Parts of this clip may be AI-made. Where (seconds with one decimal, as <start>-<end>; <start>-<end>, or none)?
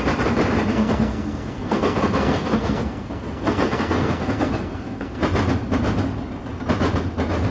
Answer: 0.7-5.2